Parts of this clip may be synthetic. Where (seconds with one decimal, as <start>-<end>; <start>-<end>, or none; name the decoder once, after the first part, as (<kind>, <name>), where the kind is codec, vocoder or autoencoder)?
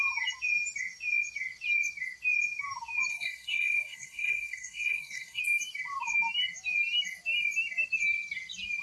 3.1-5.4 (codec, SNAC)